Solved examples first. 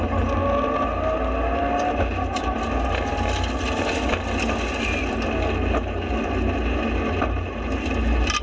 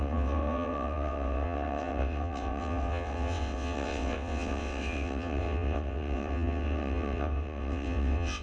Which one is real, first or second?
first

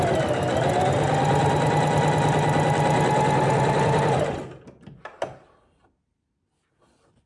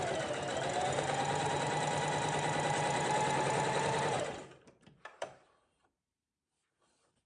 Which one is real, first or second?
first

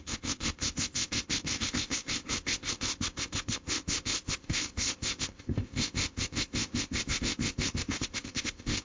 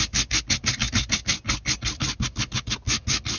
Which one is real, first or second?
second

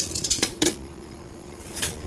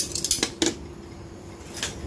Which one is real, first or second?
second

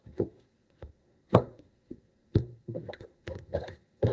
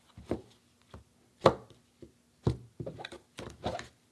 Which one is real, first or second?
second